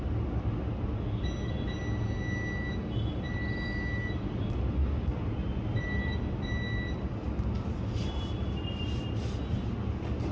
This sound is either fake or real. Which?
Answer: real